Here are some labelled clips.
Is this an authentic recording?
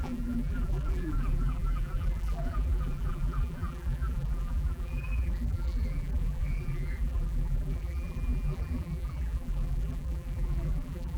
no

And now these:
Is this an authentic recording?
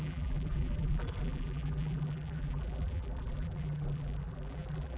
no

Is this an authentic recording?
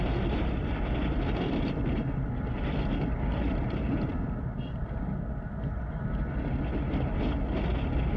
yes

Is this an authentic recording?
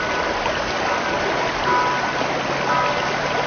yes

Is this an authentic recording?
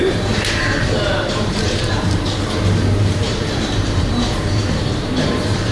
no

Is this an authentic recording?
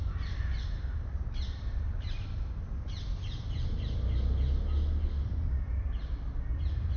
yes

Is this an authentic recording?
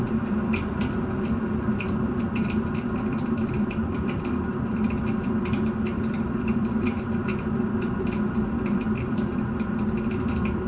no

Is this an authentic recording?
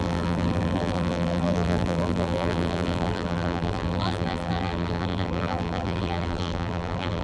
no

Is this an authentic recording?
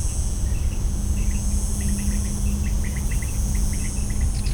yes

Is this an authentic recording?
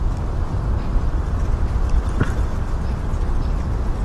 no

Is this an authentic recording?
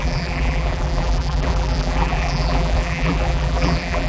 no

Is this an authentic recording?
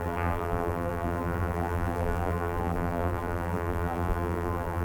no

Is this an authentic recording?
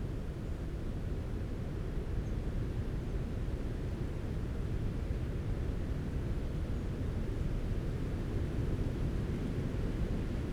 yes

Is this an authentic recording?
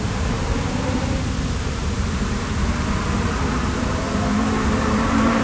no